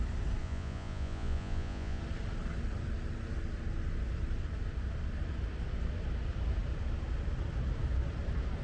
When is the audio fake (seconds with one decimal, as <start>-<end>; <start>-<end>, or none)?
0.4-2.0